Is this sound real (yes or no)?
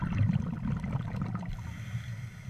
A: yes